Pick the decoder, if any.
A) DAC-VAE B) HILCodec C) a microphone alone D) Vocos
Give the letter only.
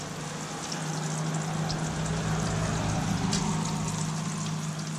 C